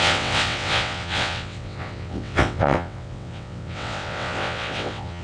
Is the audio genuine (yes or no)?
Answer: no